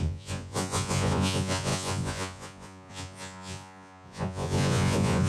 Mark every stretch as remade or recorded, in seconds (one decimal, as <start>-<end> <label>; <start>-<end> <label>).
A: 0.0-5.3 remade